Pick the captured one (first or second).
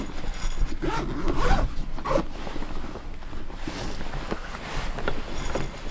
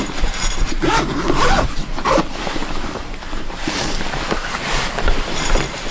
first